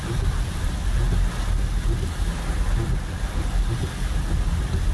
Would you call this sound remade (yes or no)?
no